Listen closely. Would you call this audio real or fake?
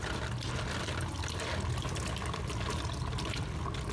real